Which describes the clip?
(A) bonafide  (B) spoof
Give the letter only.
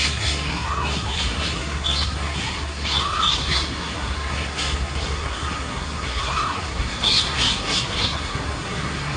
B